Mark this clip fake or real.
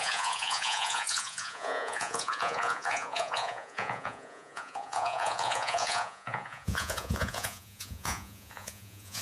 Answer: fake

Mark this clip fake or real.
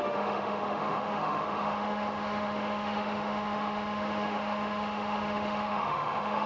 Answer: fake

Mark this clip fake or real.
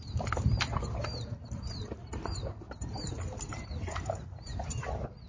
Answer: real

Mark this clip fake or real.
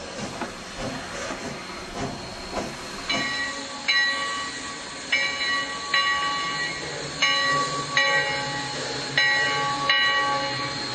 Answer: real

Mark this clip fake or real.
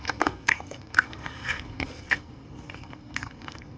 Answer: fake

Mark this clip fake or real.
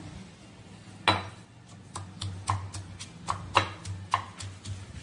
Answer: real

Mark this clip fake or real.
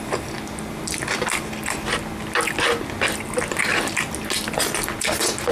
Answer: real